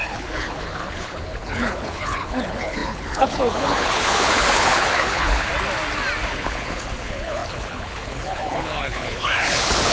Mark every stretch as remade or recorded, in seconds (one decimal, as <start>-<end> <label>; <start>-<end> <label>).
0.0-5.5 remade; 5.5-6.3 recorded; 6.3-9.9 remade